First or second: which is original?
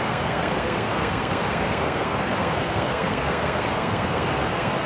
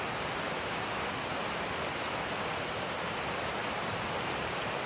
second